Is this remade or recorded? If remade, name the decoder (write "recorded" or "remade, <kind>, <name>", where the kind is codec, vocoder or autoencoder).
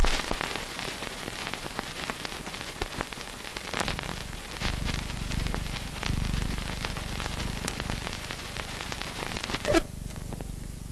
remade, vocoder, Vocos